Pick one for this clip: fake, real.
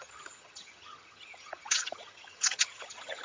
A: fake